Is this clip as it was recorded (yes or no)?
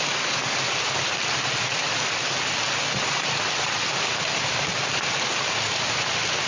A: yes